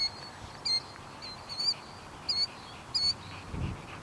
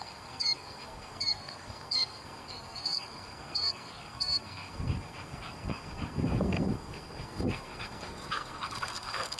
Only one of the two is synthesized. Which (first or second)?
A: second